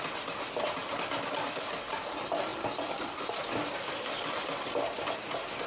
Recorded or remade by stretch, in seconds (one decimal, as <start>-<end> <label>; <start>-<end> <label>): 0.0-5.7 recorded